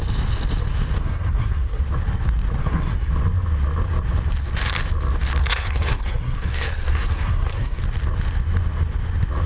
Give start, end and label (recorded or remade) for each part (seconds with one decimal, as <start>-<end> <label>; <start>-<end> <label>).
0.0-1.0 recorded; 1.0-1.8 remade; 1.8-2.6 recorded; 2.6-3.1 remade; 3.1-5.4 recorded; 5.4-7.8 remade; 7.8-9.5 recorded